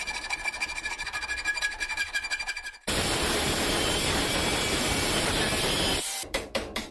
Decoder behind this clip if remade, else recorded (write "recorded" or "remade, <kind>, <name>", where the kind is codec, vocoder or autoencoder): remade, vocoder, BigVGAN v2